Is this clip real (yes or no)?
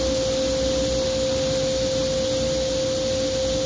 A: yes